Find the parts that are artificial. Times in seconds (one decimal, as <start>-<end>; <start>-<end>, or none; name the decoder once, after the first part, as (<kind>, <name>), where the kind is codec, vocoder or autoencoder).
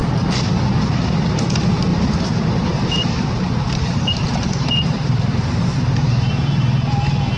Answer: 1.9-6.3 (vocoder, BigVGAN v2)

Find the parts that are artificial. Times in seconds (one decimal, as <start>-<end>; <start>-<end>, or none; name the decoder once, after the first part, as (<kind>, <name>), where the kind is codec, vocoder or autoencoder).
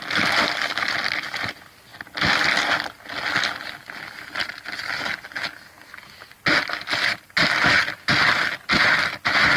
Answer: none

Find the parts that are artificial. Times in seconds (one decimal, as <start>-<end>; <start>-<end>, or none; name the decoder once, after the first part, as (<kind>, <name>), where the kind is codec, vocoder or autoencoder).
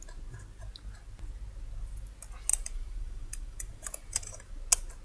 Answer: 2.5-4.5 (vocoder, BigVGAN v2)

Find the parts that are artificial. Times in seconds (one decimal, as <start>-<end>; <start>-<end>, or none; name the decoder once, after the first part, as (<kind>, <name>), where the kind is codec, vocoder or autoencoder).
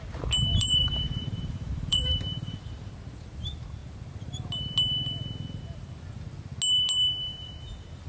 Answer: 0.5-2.9 (vocoder, BigVGAN v2); 7.3-8.1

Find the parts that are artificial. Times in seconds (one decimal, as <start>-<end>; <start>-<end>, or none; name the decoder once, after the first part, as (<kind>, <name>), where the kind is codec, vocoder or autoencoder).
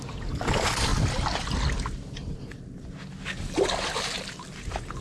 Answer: 0.0-0.9 (vocoder, BigVGAN v2); 3.9-5.0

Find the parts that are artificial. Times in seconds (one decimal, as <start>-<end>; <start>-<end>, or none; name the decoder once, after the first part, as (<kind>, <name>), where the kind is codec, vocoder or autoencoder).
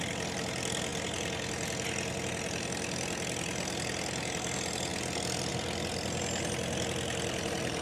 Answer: none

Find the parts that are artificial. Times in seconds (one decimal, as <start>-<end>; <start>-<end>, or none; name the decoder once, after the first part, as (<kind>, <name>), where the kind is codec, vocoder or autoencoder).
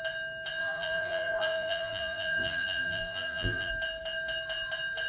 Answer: 0.6-3.7 (vocoder, BigVGAN v2)